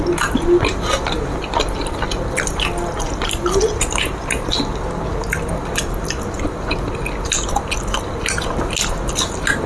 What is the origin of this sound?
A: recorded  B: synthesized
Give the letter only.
A